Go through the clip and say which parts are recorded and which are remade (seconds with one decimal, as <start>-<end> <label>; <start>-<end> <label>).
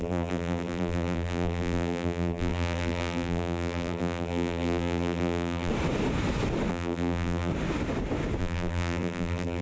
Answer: 0.0-5.7 remade; 5.7-6.7 recorded; 6.7-7.5 remade; 7.5-8.4 recorded; 8.4-9.6 remade